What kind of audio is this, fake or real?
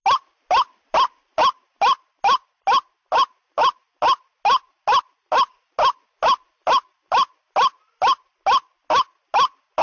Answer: real